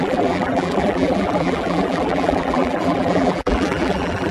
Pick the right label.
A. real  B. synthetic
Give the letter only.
B